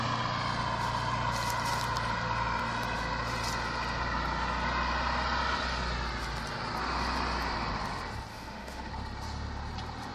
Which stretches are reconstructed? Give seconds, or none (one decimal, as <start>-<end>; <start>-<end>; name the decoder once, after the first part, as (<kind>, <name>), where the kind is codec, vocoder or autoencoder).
8.3-8.9 (autoencoder, DAC-VAE)